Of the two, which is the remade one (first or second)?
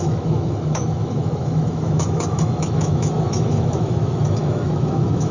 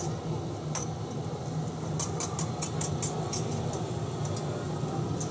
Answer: first